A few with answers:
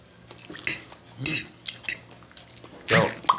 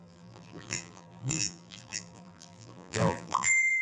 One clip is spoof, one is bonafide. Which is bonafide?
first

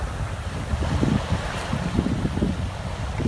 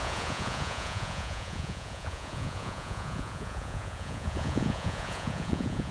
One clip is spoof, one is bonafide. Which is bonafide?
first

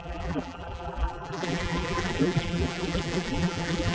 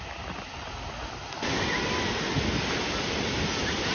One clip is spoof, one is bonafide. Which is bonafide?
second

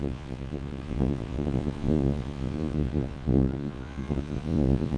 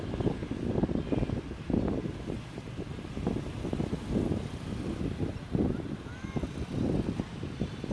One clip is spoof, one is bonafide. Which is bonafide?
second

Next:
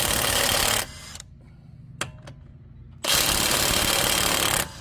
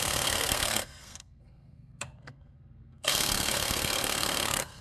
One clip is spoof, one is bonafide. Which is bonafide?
first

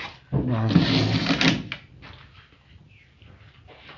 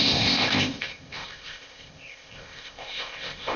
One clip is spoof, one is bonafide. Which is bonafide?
first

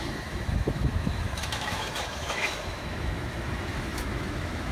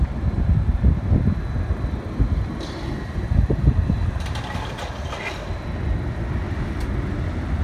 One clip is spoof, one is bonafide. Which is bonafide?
second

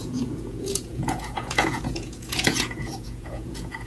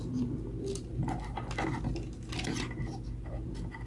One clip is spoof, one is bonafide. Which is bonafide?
second